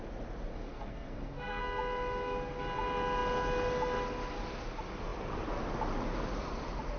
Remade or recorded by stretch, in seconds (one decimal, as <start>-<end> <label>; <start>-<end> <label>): 0.0-0.5 recorded; 0.5-1.6 remade; 1.6-7.0 recorded